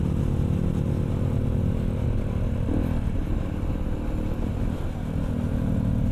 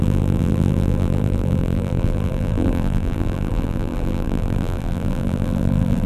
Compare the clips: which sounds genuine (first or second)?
first